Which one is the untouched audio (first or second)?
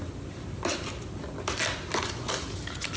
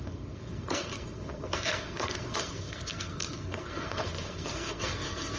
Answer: first